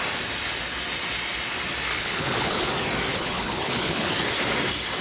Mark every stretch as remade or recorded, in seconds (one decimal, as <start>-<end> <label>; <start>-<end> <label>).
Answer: 0.0-1.9 recorded; 1.9-2.7 remade; 2.7-3.1 recorded; 3.1-4.1 remade; 4.1-5.0 recorded